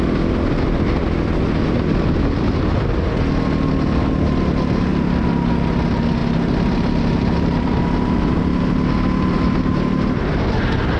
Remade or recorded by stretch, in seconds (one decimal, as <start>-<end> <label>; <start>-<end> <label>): 0.0-11.0 recorded

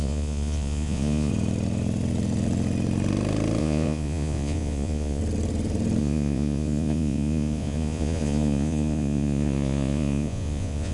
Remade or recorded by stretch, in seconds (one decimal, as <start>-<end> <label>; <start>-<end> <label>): 0.0-1.3 remade; 1.3-3.6 recorded; 3.6-5.2 remade; 5.2-6.0 recorded; 6.0-10.9 remade

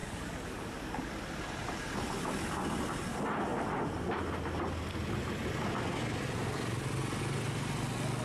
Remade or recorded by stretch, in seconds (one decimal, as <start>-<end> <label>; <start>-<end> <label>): 0.0-1.1 remade; 1.1-8.2 recorded

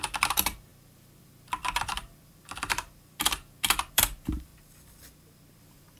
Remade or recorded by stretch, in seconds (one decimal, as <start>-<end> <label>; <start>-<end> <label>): 0.0-4.5 remade; 4.5-5.6 recorded; 5.6-6.0 remade

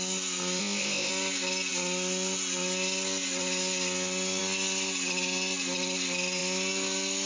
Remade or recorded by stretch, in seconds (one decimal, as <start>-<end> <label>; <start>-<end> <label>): 0.0-0.6 recorded; 0.6-1.1 remade; 1.1-7.3 recorded

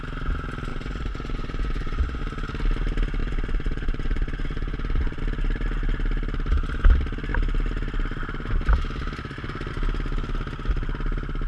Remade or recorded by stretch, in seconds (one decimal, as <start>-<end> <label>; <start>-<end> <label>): 0.0-0.7 recorded; 0.7-2.2 remade; 2.2-3.2 recorded; 3.2-5.2 remade; 5.2-11.5 recorded

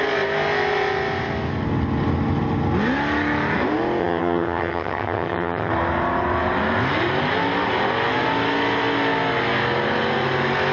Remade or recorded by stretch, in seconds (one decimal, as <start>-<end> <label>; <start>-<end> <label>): 0.0-4.0 recorded; 4.0-5.7 remade; 5.7-10.7 recorded